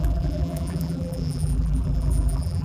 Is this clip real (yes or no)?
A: no